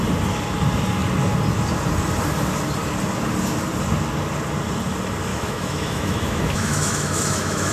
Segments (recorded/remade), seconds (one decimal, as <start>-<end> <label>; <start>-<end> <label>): 0.0-5.3 recorded; 5.3-7.7 remade